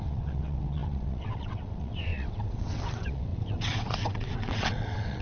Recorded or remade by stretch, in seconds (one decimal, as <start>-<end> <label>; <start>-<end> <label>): 0.0-5.2 remade